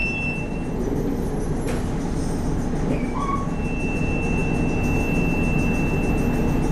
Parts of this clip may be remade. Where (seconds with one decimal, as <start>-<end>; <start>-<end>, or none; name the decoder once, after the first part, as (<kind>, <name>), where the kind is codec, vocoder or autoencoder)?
none